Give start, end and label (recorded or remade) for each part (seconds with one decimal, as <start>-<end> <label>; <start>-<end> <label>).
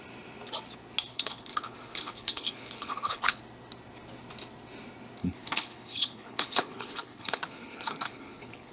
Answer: 0.0-1.1 recorded; 1.1-3.4 remade; 3.4-5.2 recorded; 5.2-8.7 remade